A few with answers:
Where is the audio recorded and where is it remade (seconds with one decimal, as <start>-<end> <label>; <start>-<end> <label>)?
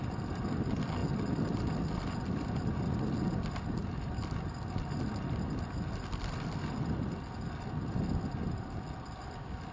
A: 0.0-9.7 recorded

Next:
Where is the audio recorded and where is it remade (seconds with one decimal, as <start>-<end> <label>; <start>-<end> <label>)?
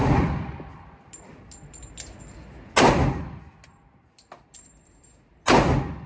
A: 0.0-6.1 recorded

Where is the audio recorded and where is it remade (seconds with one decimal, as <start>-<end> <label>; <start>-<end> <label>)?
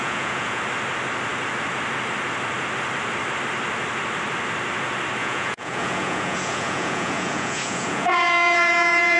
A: 0.0-0.6 remade; 0.6-5.2 recorded; 5.2-9.2 remade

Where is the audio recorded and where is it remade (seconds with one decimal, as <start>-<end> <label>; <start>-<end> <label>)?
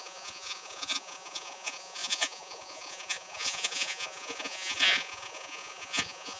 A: 0.0-6.4 remade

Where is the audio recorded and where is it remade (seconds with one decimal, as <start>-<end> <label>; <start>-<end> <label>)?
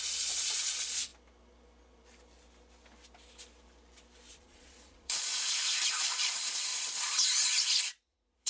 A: 0.0-1.1 remade; 1.1-4.3 recorded; 4.3-5.3 remade; 5.3-5.9 recorded; 5.9-8.5 remade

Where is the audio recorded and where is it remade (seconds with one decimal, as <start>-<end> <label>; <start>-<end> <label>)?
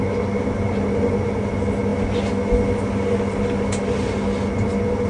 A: 0.0-5.1 recorded